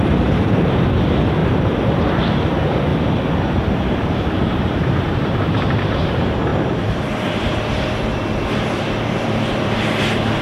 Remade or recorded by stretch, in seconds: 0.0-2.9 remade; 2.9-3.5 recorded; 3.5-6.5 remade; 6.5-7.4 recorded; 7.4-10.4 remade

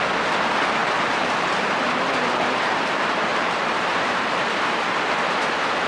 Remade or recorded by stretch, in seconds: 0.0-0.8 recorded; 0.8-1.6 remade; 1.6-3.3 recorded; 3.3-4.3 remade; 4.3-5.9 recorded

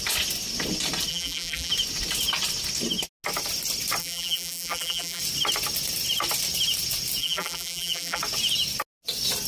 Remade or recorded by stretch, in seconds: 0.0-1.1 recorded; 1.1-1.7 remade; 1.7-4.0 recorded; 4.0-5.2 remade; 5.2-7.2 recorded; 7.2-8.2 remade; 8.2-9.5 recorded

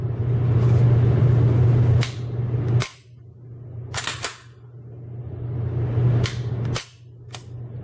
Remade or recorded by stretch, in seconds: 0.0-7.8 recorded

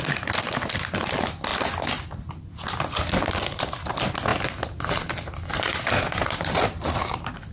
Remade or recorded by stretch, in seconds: 0.0-1.5 remade; 1.5-3.6 recorded; 3.6-4.3 remade; 4.3-5.1 recorded; 5.1-7.5 remade

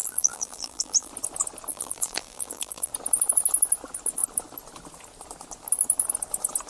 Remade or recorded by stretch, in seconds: 0.0-1.1 remade; 1.1-1.7 recorded; 1.7-2.9 remade; 2.9-6.7 recorded

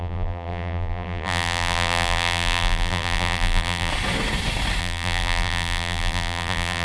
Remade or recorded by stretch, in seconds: 0.0-3.9 remade; 3.9-4.8 recorded; 4.8-6.8 remade